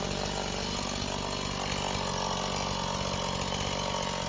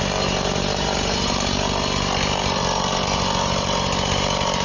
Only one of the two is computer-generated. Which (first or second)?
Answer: second